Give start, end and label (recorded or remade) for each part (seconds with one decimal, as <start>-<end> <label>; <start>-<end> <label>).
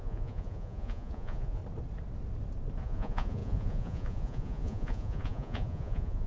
0.0-1.6 remade; 1.6-2.8 recorded; 2.8-6.3 remade